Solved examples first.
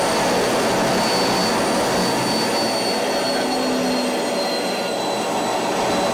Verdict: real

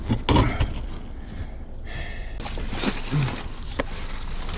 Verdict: real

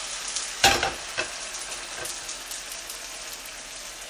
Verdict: real